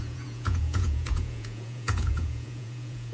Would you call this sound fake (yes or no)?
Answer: yes